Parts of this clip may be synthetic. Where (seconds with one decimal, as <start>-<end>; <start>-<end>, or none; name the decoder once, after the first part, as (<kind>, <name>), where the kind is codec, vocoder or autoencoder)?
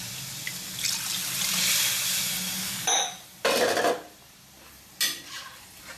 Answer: none